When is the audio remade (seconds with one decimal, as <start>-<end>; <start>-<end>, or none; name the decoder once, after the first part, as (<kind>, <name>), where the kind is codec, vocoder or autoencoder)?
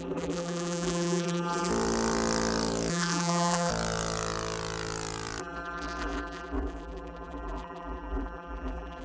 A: 0.0-1.7 (vocoder, BigVGAN v2); 2.9-3.7; 5.4-9.0